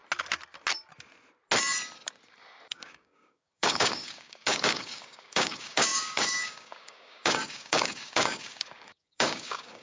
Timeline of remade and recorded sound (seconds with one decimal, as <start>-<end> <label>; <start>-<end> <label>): 0.0-2.7 recorded; 2.7-9.8 remade